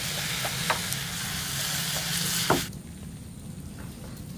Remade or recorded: recorded